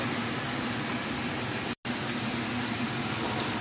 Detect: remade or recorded recorded